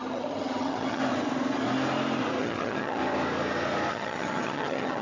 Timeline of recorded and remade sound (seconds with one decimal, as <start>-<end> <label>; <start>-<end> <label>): 0.0-1.0 remade; 1.0-2.4 recorded; 2.4-3.0 remade; 3.0-3.9 recorded; 3.9-5.0 remade